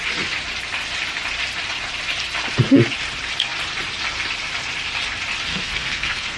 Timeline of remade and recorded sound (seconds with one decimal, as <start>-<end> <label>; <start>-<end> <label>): 0.0-5.5 recorded; 5.5-6.4 remade

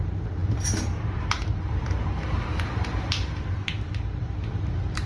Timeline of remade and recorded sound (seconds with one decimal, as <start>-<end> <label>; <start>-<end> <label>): 0.0-5.1 remade

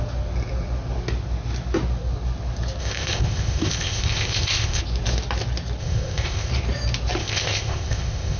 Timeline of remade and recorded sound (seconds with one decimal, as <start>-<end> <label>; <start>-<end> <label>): 0.0-2.8 recorded; 2.8-4.8 remade; 4.8-5.8 recorded; 5.8-6.5 remade; 6.5-7.2 recorded; 7.2-8.4 remade

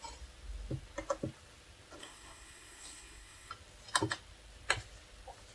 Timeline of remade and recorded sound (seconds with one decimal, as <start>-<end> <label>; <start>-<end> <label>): 0.0-2.0 recorded; 2.0-3.5 remade; 3.5-5.5 recorded